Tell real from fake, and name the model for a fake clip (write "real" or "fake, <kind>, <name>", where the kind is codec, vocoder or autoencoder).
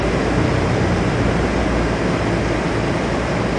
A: real